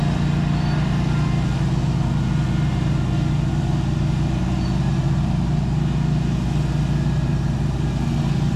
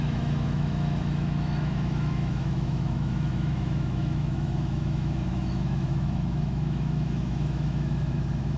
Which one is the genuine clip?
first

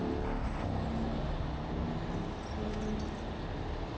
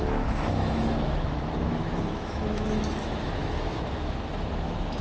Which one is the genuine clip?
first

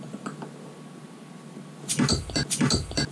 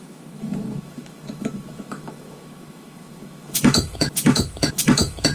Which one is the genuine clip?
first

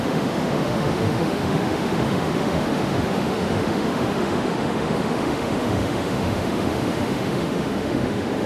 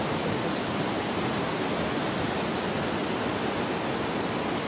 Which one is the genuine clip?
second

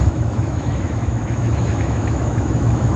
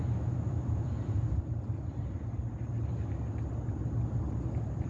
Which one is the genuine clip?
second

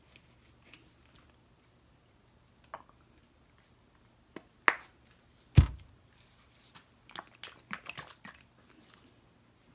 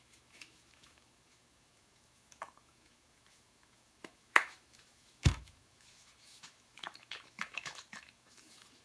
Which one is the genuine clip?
first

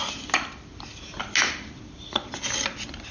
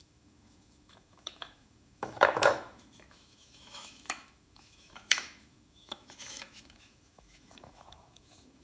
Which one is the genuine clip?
first